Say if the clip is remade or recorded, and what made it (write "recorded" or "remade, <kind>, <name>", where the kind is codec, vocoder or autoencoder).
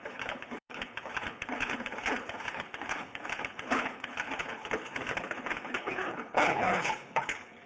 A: remade, codec, HILCodec